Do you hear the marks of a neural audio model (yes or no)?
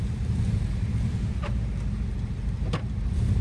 yes